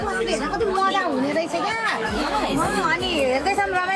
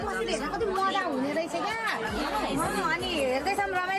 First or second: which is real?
second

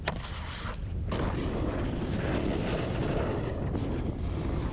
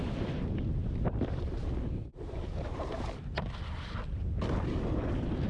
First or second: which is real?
second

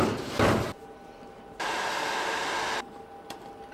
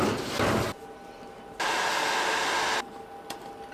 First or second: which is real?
second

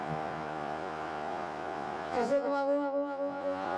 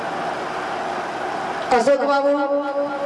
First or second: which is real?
second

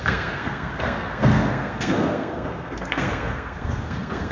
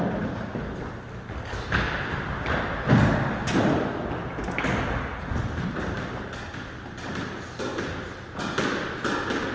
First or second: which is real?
second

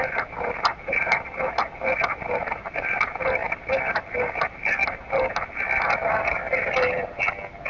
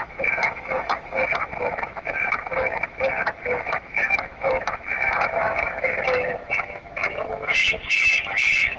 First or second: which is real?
first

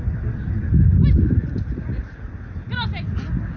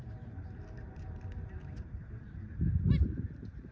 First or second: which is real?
first